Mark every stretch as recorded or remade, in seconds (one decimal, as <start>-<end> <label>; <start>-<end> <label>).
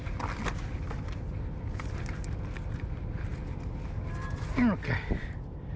0.0-5.8 recorded